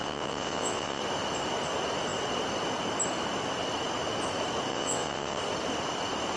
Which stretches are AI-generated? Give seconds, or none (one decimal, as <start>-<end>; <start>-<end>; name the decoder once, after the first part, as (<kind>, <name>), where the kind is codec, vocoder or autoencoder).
0.0-1.0 (vocoder, WaveNeXt); 4.7-5.4

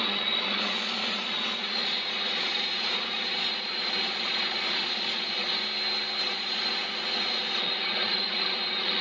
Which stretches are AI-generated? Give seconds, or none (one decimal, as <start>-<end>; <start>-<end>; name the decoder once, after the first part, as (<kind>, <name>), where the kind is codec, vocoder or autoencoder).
0.0-5.6 (vocoder, Vocos); 6.2-9.0

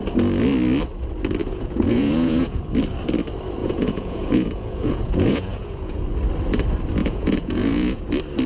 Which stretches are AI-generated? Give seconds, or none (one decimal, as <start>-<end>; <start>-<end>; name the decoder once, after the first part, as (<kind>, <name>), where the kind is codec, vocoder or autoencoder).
1.4-2.6 (vocoder, Vocos); 3.6-6.0; 7.0-8.0

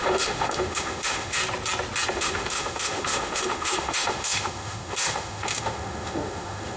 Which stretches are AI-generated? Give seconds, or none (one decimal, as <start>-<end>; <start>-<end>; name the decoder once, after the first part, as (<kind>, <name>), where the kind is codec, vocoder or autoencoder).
0.0-1.4 (autoencoder, DAC-VAE); 2.1-6.8

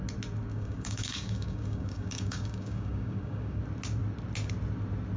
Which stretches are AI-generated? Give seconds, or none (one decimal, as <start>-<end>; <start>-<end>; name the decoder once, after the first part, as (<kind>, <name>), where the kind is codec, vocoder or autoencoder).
0.5-3.6 (codec, DAC)

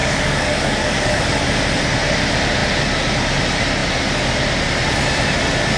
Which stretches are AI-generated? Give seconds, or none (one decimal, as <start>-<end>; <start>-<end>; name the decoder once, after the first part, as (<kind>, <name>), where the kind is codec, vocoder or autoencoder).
0.0-1.3 (codec, DAC)